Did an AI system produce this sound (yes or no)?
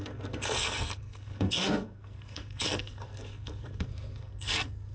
yes